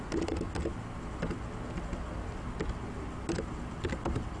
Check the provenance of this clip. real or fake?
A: real